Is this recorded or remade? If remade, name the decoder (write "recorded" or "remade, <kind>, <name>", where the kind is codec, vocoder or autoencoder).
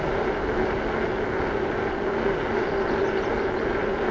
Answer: recorded